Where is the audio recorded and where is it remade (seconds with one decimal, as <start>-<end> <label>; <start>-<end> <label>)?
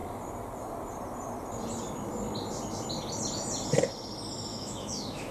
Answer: 0.0-4.5 recorded; 4.5-5.3 remade